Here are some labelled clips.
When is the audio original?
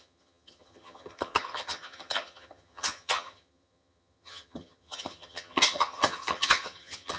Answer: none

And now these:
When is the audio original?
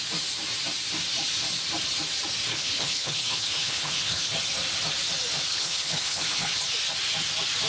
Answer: 0.0-2.5; 4.3-5.5; 6.6-7.7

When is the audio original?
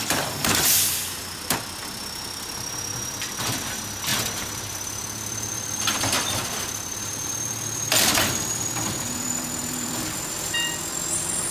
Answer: none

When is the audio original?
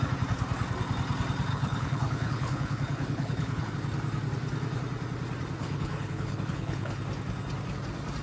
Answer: 0.0-1.5; 3.7-5.6; 7.0-8.2